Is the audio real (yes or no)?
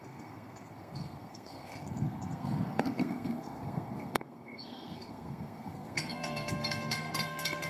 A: no